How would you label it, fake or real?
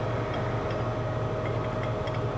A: real